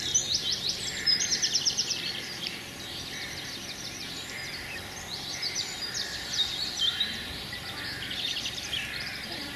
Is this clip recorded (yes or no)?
no